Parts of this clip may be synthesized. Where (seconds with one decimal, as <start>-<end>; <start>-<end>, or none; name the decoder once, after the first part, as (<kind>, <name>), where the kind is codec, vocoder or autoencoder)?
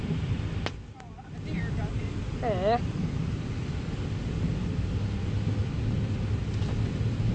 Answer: 5.6-6.4 (vocoder, BigVGAN v2)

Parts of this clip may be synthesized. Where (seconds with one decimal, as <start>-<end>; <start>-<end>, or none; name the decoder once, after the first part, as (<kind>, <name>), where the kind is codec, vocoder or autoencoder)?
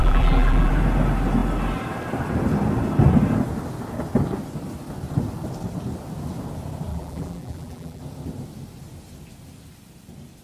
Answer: 0.0-0.7 (vocoder, BigVGAN v2); 6.9-8.0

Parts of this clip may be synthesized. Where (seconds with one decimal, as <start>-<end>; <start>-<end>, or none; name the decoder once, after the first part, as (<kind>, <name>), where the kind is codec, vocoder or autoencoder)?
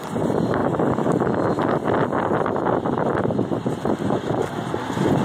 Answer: none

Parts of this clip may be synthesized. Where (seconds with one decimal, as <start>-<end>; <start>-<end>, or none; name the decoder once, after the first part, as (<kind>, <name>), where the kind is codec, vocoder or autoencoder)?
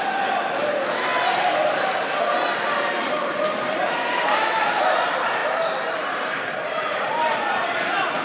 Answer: 0.0-8.2 (vocoder, BigVGAN v2)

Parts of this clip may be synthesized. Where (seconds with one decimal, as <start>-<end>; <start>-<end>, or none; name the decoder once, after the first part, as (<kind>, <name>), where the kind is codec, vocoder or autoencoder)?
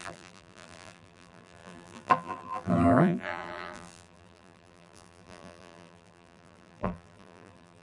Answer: 0.0-7.8 (vocoder, BigVGAN v2)